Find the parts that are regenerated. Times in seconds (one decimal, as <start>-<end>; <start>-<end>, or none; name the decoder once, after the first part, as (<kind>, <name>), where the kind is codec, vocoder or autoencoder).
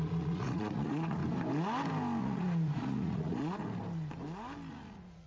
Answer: 0.0-1.2 (vocoder, Vocos); 2.2-3.6; 4.7-5.3